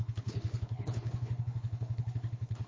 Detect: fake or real fake